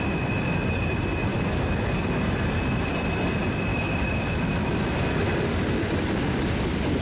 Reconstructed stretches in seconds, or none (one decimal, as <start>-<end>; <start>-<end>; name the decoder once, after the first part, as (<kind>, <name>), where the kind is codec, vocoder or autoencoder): 1.3-1.9 (autoencoder, DAC-VAE); 3.7-4.8